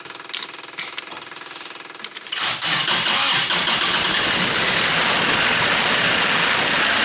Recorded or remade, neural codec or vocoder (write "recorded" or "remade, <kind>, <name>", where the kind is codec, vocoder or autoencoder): recorded